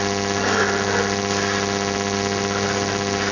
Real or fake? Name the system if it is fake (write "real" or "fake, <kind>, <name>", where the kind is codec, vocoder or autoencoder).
real